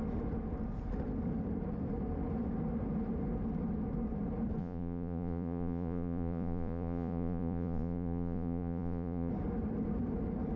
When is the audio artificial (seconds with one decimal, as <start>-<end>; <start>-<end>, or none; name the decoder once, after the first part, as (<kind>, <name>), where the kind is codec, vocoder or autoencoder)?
4.6-9.3 (vocoder, Vocos)